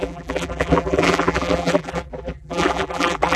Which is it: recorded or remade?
remade